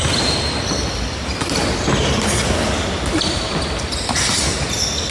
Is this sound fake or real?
real